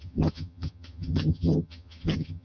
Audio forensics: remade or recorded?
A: remade